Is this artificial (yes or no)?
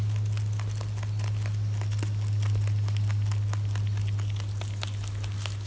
no